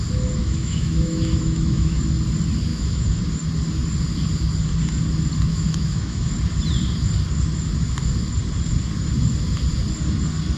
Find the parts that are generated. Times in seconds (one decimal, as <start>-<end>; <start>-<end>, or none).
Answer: 0.4-2.0; 2.7-3.2; 5.5-6.3